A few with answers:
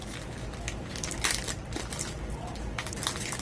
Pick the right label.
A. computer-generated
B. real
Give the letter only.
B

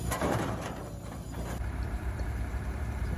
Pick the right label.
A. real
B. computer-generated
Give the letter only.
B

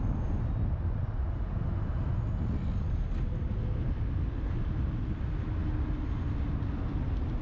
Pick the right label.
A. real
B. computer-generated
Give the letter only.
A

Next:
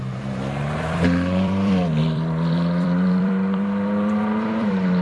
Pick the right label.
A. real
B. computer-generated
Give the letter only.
B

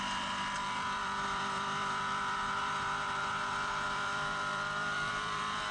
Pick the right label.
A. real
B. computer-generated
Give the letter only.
B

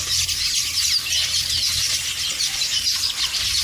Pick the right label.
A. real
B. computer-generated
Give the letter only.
A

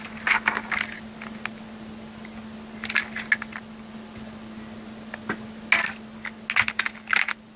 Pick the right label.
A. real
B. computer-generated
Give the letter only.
A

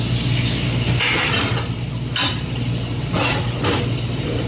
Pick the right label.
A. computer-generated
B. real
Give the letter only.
B